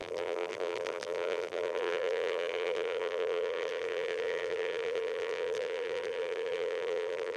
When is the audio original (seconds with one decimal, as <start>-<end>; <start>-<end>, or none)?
none